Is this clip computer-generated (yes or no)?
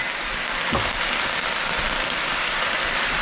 yes